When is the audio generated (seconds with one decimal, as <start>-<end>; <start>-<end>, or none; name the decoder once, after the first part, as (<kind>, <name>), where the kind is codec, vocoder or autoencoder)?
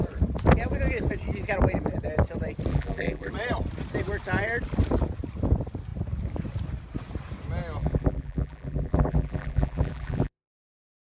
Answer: 2.7-3.3 (vocoder, BigVGAN v2); 7.8-11.1